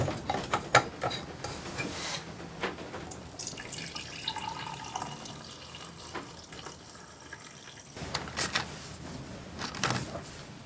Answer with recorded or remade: recorded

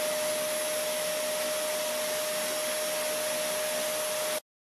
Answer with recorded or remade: recorded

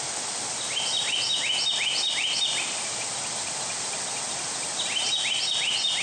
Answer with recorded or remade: recorded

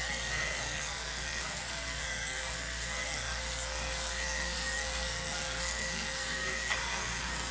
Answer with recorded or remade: remade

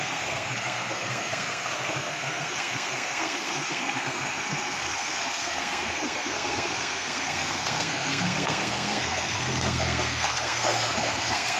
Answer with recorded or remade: remade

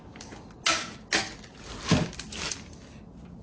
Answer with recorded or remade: recorded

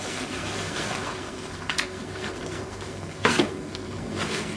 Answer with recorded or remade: remade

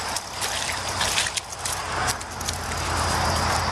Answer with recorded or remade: recorded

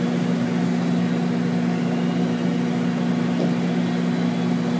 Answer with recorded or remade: recorded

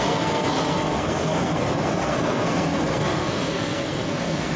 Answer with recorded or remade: remade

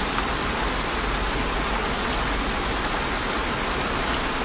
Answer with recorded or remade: recorded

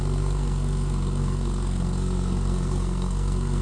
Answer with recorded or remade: remade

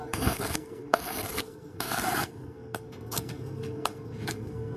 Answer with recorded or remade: remade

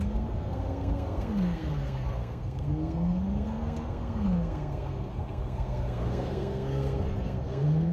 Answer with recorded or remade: remade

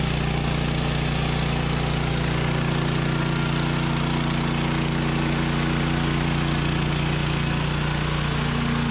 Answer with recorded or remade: recorded